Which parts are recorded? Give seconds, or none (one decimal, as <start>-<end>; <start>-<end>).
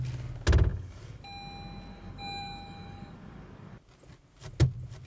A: 0.0-0.7; 1.2-1.9; 3.8-5.1